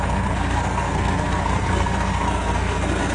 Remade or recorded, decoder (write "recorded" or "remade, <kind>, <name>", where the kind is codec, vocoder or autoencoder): remade, codec, SNAC